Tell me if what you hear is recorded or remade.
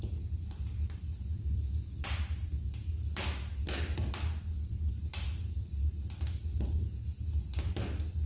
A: recorded